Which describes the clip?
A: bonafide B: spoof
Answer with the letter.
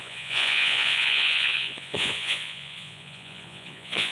B